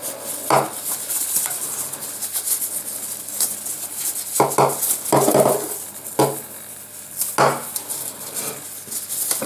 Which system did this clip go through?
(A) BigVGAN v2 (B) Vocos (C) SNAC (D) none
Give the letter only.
D